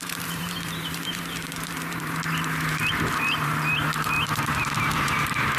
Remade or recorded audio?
remade